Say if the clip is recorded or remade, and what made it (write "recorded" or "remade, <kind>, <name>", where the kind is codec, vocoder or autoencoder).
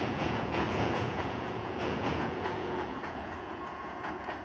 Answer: remade, vocoder, Vocos